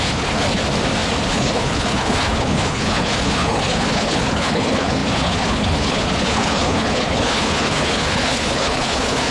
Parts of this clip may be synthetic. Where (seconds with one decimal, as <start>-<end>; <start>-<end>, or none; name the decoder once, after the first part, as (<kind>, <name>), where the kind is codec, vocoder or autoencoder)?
0.0-0.6 (codec, HILCodec); 1.3-9.3